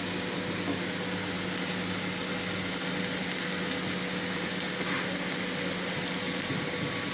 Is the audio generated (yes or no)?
no